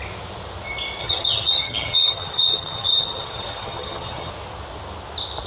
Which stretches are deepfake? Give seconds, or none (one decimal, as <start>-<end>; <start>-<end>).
1.0-4.3